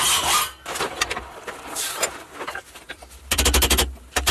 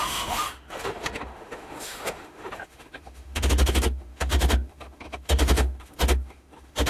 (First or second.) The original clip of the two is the first